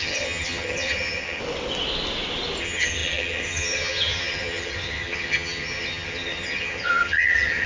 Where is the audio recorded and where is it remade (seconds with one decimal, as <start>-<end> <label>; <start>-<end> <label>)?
0.0-1.4 remade; 1.4-2.6 recorded; 2.6-7.7 remade